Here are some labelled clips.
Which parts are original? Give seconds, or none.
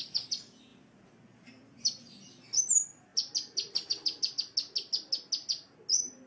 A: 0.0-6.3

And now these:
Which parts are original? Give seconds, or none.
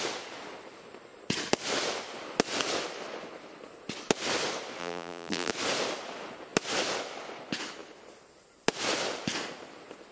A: 0.0-4.8; 5.5-10.1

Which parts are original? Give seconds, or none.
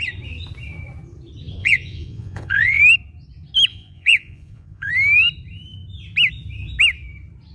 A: 0.0-1.6; 2.8-3.7; 4.9-7.5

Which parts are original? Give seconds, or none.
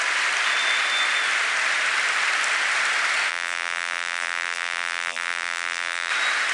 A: 0.0-3.3; 6.1-6.5